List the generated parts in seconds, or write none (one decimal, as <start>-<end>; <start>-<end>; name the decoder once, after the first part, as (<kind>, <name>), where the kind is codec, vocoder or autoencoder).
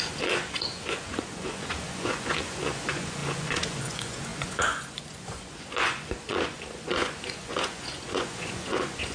0.0-9.1 (vocoder, Vocos)